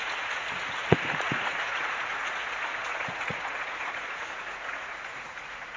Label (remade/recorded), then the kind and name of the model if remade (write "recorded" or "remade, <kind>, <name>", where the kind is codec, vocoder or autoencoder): remade, vocoder, Vocos